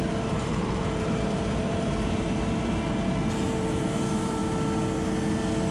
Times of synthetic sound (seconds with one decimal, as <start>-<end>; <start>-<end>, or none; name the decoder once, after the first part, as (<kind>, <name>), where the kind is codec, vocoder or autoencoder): 0.0-4.4 (vocoder, BigVGAN v2)